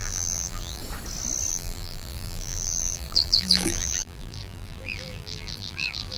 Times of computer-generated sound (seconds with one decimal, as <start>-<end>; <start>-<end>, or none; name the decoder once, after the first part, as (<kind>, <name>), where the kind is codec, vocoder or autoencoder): 0.0-0.8 (vocoder, BigVGAN v2); 1.5-6.2